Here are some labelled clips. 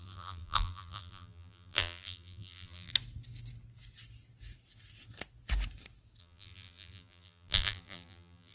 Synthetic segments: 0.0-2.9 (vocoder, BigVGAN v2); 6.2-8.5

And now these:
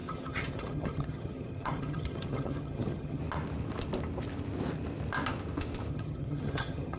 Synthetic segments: 0.0-3.2 (vocoder, HiFi-GAN); 5.9-7.0

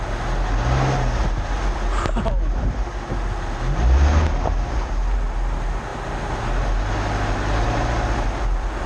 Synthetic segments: none

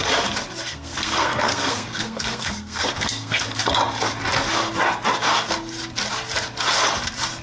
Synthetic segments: 0.7-3.4 (codec, SNAC)

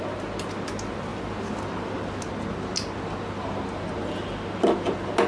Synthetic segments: none

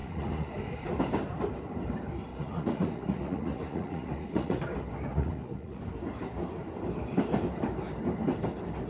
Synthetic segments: 0.0-0.5 (vocoder, Vocos); 2.3-4.6; 5.1-5.8

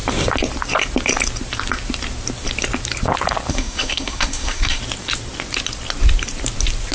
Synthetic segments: 3.5-4.8 (codec, SNAC)

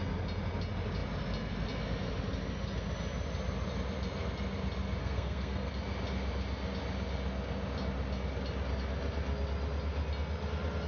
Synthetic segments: 5.0-5.7 (codec, SNAC)